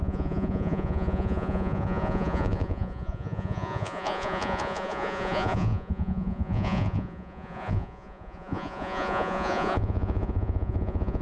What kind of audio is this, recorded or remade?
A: remade